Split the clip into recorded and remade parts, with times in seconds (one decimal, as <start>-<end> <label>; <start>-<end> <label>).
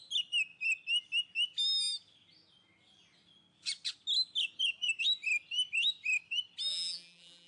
0.0-6.7 recorded; 6.7-7.5 remade